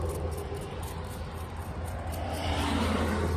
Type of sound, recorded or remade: recorded